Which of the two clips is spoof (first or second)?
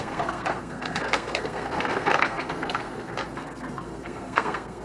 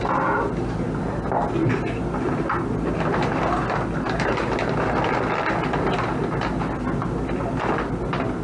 first